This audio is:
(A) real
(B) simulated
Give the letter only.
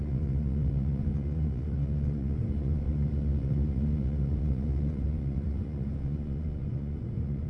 B